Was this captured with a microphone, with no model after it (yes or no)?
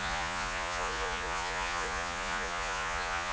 no